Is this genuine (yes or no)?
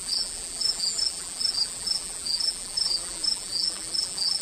no